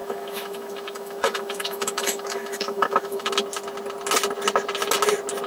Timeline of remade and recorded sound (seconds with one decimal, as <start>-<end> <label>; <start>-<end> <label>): 0.0-3.3 remade; 3.3-5.5 recorded